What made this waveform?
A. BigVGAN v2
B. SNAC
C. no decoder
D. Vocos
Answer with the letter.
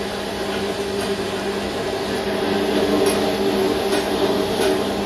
C